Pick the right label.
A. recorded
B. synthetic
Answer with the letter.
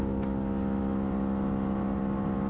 A